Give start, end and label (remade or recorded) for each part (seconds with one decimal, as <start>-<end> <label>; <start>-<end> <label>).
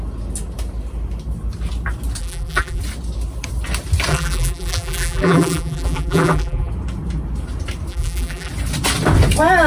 0.0-2.2 recorded; 2.2-2.8 remade; 2.8-4.1 recorded; 4.1-6.7 remade; 6.7-7.9 recorded; 7.9-8.5 remade; 8.5-9.7 recorded